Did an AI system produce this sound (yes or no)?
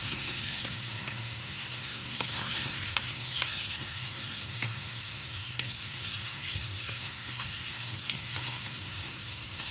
yes